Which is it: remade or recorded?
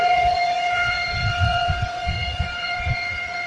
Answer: remade